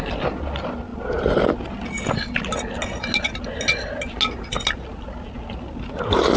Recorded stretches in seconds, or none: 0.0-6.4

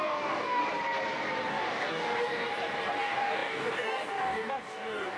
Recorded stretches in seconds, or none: 0.6-1.5; 2.5-3.0

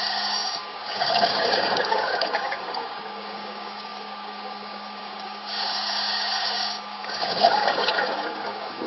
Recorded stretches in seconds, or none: none

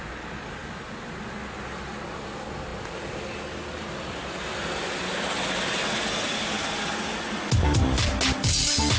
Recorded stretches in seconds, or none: 0.0-9.0

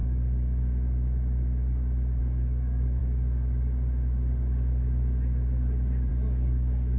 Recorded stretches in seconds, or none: 0.0-2.2; 3.0-6.1

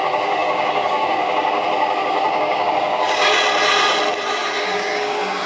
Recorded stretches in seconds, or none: 3.3-4.6